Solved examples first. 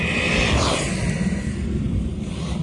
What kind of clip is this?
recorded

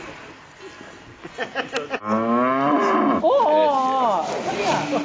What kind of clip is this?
recorded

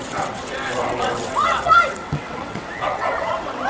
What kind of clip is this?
remade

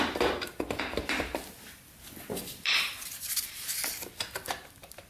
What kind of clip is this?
remade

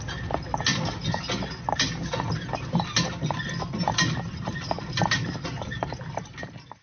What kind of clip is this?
recorded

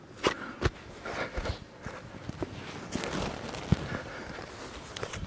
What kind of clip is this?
recorded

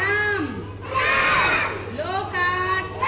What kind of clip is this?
recorded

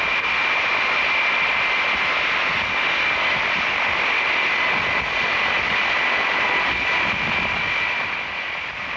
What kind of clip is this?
recorded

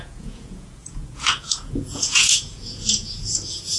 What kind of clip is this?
remade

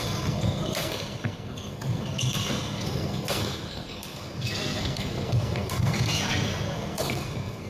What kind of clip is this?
remade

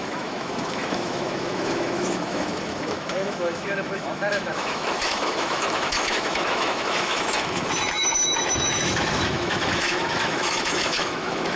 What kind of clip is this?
remade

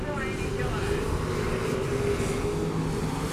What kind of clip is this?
recorded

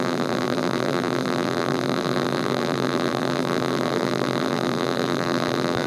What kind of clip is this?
remade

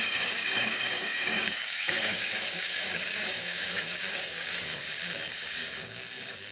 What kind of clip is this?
remade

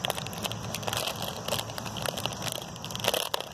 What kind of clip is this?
recorded